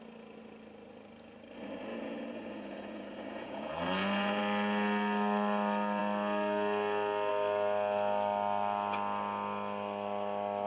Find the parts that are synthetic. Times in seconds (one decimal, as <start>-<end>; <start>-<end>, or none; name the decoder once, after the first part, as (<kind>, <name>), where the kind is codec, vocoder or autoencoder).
1.9-4.4 (vocoder, Vocos)